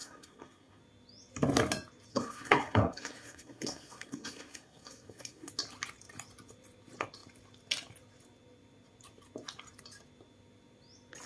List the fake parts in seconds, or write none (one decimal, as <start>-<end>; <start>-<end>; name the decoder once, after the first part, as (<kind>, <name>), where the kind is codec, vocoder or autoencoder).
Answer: 0.0-0.8 (codec, SNAC); 2.1-5.5